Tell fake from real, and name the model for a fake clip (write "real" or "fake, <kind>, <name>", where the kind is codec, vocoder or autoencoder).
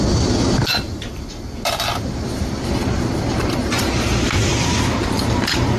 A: fake, vocoder, BigVGAN v2